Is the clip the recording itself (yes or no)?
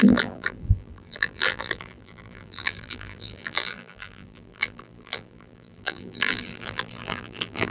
no